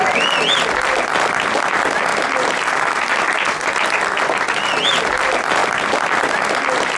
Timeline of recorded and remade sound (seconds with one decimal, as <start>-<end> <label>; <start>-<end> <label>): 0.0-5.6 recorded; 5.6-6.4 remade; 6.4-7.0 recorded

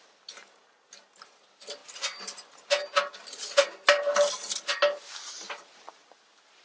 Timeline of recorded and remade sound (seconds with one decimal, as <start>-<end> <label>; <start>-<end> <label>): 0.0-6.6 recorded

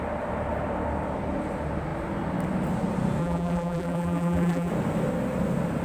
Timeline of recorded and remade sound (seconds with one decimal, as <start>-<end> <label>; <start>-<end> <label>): 0.0-3.2 recorded; 3.2-4.7 remade; 4.7-5.8 recorded

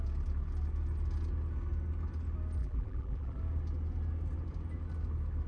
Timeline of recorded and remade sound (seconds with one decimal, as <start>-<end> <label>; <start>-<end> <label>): 0.0-2.6 recorded; 2.6-3.4 remade; 3.4-5.5 recorded

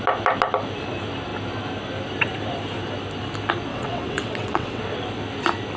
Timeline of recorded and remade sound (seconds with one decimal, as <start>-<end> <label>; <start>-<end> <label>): 0.0-3.7 recorded; 3.7-4.8 remade; 4.8-5.8 recorded

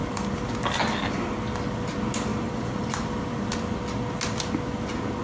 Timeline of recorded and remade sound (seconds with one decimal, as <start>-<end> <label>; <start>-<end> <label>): 0.0-0.5 remade; 0.5-2.3 recorded; 2.3-3.4 remade; 3.4-5.2 recorded

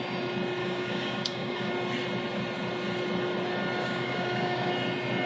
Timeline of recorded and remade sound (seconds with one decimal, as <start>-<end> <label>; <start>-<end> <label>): 0.0-0.6 recorded; 0.6-1.7 remade; 1.7-3.8 recorded; 3.8-4.7 remade; 4.7-5.3 recorded